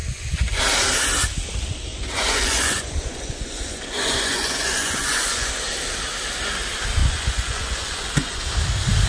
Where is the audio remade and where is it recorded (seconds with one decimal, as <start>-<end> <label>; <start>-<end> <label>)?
0.0-0.6 remade; 0.6-1.9 recorded; 1.9-5.5 remade; 5.5-7.0 recorded; 7.0-8.4 remade; 8.4-9.1 recorded